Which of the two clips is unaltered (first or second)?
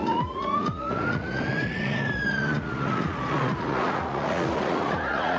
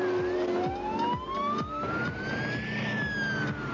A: second